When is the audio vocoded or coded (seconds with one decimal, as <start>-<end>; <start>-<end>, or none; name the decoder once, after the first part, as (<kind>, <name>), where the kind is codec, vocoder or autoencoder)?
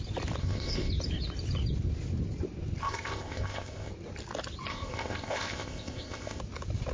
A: 0.4-0.9 (codec, ZipCodec); 2.8-3.9; 4.7-6.4